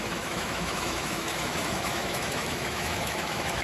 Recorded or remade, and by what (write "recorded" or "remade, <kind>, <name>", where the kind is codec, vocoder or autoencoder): remade, autoencoder, DAC-VAE